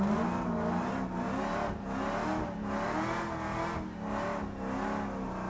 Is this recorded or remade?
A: recorded